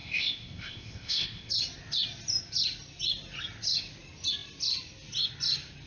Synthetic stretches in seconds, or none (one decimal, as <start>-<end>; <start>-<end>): 0.0-1.5

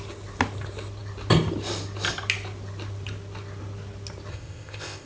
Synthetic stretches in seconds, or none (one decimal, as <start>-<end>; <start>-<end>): 4.3-5.1

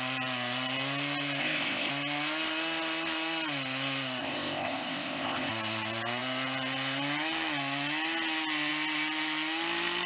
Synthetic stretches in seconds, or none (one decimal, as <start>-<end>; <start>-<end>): 1.4-1.9; 4.2-5.5

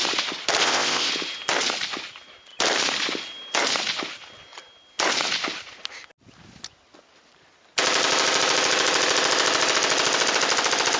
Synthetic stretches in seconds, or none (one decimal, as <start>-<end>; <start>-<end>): 0.6-1.1

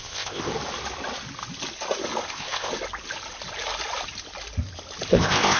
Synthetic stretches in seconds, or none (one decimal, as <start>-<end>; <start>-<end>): 0.0-0.5; 2.3-2.7; 5.1-5.6

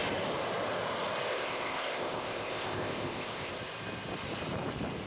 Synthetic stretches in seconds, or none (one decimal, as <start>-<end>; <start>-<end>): 1.3-3.5